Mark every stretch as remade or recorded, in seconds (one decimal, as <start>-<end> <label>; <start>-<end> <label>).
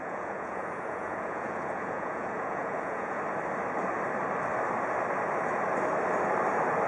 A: 0.0-3.2 remade; 3.2-6.9 recorded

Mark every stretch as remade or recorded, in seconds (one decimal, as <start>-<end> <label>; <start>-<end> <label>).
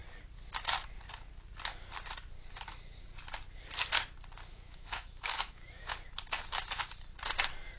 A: 0.0-4.5 recorded; 4.5-5.8 remade; 5.8-7.8 recorded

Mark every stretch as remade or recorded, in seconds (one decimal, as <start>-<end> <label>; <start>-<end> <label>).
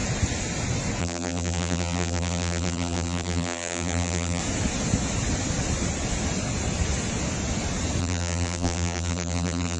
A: 0.0-1.0 recorded; 1.0-4.4 remade; 4.4-8.0 recorded; 8.0-9.8 remade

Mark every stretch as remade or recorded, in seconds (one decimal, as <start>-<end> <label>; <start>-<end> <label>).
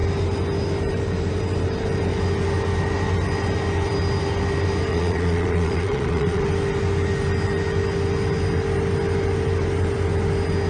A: 0.0-4.9 recorded; 4.9-6.4 remade; 6.4-10.7 recorded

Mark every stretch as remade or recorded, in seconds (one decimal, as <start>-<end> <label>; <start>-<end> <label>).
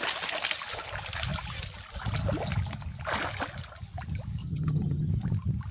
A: 0.0-4.4 recorded; 4.4-5.1 remade; 5.1-5.7 recorded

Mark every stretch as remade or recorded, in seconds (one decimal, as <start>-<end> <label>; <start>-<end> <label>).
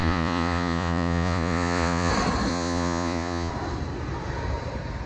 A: 0.0-2.1 remade; 2.1-2.5 recorded; 2.5-3.5 remade; 3.5-5.1 recorded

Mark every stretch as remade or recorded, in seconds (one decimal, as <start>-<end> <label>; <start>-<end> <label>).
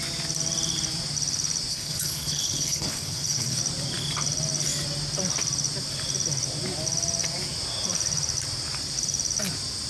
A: 0.0-1.7 recorded; 1.7-3.6 remade; 3.6-9.9 recorded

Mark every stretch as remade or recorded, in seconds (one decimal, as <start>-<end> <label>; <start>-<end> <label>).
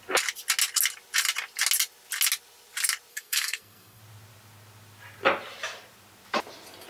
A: 0.0-3.1 recorded; 3.1-4.0 remade; 4.0-6.9 recorded